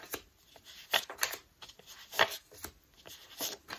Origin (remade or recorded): recorded